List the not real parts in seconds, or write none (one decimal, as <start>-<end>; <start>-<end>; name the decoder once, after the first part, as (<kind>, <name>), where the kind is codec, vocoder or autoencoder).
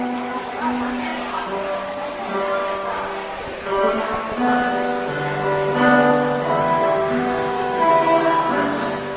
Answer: 6.6-7.9 (autoencoder, DAC-VAE)